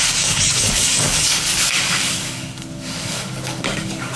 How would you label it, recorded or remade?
remade